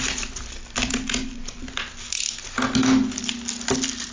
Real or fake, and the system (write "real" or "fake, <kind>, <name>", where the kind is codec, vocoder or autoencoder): real